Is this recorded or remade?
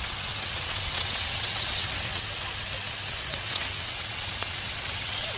remade